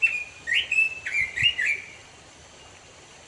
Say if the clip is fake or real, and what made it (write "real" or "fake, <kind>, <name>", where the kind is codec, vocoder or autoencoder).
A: real